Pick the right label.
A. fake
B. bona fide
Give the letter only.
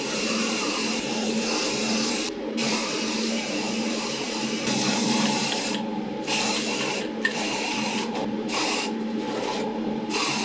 A